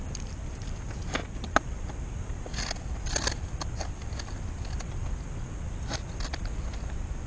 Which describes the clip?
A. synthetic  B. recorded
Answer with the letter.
B